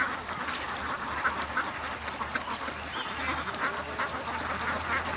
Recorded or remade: recorded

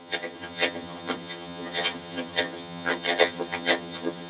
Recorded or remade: remade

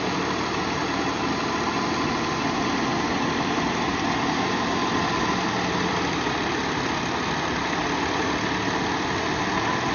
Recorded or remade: recorded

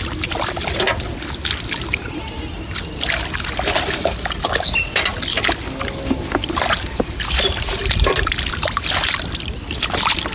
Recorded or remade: recorded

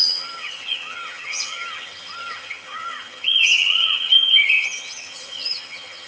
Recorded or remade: remade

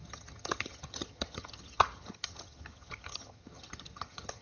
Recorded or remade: remade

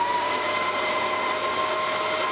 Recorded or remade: recorded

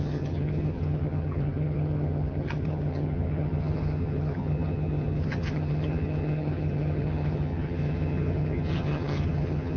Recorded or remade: remade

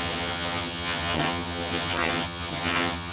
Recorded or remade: remade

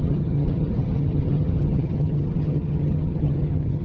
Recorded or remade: remade